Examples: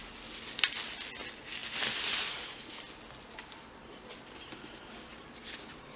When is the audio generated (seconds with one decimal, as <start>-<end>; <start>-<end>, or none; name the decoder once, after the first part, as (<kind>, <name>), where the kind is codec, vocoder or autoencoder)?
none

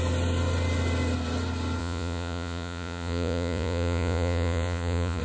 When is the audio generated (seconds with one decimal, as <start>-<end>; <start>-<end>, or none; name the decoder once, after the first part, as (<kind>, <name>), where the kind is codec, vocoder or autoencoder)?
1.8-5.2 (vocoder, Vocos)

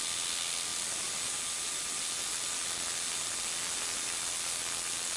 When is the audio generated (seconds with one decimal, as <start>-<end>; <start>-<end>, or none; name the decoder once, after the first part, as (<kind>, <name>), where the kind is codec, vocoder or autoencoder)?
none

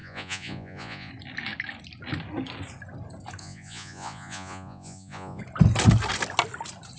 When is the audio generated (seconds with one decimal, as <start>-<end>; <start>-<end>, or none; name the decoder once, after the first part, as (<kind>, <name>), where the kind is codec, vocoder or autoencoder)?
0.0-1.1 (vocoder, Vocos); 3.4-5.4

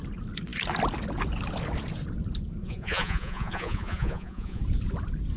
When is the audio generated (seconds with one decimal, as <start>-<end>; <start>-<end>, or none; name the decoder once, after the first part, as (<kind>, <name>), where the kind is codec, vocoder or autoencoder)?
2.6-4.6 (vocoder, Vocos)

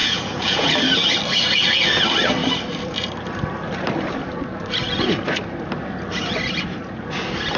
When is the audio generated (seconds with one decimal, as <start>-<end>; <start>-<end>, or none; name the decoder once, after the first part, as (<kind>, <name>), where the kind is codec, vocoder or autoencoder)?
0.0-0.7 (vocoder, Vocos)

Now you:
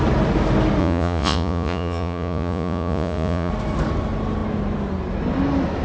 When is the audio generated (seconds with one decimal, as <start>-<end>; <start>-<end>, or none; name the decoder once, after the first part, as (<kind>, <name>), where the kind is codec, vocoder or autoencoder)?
0.8-3.5 (vocoder, Vocos)